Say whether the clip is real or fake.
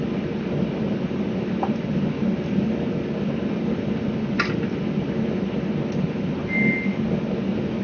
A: real